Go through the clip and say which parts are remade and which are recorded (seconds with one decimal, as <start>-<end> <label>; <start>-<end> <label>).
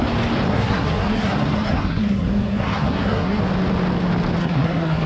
0.0-0.5 recorded; 0.5-3.4 remade; 3.4-4.4 recorded; 4.4-5.1 remade